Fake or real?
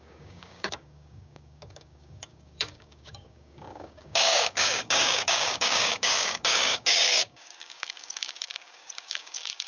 fake